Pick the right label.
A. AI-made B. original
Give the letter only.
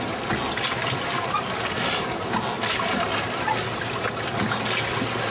B